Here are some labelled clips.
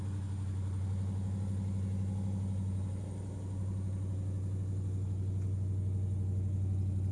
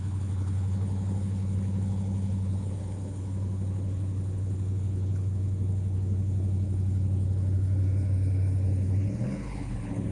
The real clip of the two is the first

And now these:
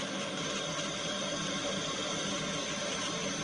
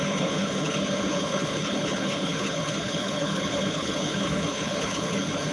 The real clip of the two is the first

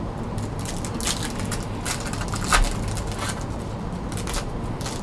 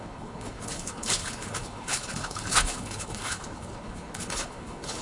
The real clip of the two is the first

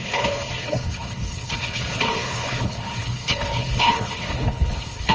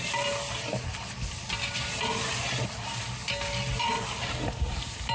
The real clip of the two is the second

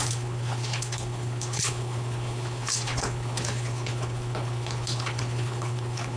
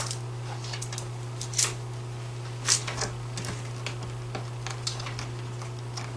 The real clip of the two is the second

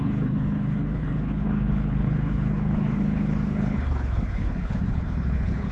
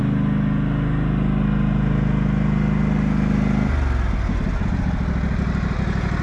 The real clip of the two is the second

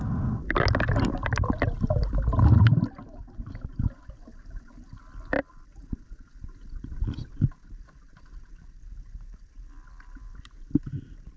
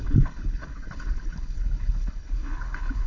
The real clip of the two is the first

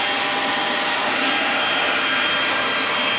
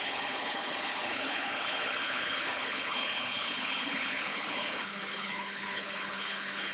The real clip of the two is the first